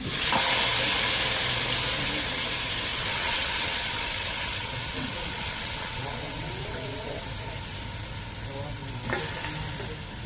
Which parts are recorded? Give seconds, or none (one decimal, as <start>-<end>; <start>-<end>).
0.0-2.9; 7.2-10.3